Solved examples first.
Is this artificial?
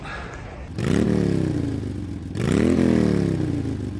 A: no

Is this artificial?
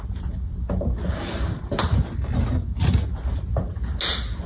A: no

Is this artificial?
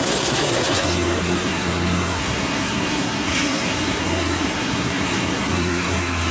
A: yes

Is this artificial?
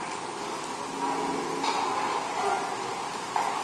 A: no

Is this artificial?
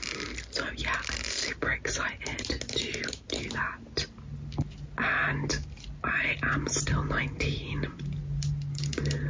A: no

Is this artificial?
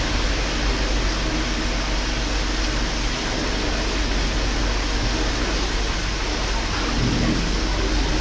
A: no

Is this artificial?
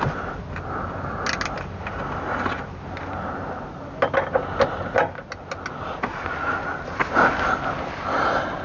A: no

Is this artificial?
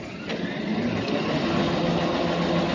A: no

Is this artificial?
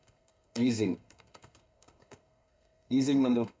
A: yes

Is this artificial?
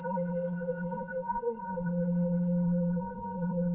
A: yes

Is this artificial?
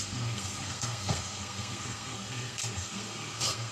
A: yes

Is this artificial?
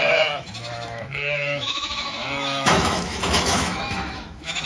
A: yes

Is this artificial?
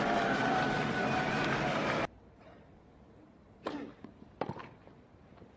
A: yes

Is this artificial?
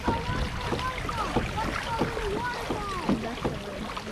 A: no